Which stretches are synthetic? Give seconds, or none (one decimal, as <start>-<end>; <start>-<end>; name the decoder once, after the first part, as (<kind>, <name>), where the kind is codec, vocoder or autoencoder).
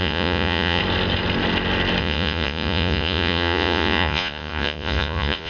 0.0-0.8 (vocoder, Vocos); 2.0-5.5